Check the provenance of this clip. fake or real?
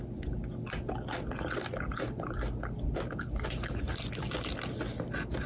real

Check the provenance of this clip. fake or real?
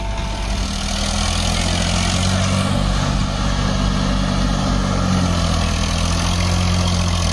real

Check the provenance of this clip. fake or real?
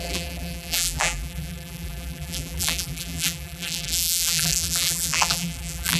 fake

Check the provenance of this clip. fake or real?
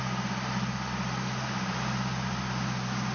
real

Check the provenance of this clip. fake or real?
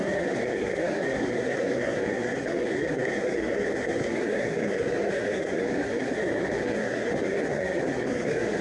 fake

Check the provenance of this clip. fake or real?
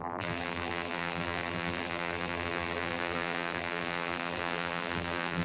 fake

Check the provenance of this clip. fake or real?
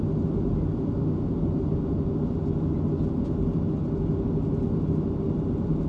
real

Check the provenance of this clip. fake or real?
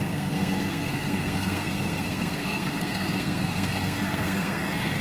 fake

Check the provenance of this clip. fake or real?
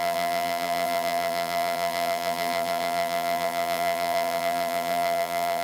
fake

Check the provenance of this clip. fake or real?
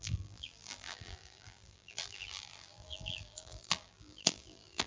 fake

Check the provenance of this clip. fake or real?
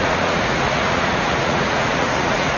fake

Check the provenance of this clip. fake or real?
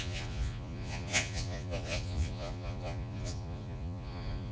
fake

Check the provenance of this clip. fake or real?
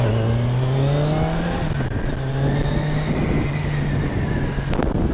real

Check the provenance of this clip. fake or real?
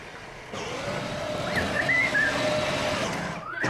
real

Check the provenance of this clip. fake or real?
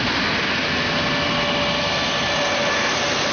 real